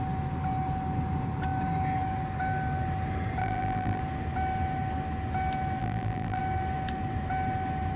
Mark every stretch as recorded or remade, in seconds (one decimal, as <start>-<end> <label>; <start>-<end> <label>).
0.0-3.4 recorded; 3.4-4.0 remade; 4.0-5.8 recorded; 5.8-6.4 remade; 6.4-8.0 recorded